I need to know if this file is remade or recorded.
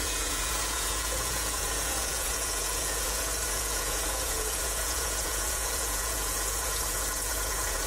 remade